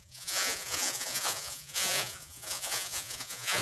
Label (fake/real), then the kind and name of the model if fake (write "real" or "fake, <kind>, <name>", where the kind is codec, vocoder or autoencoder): fake, vocoder, Vocos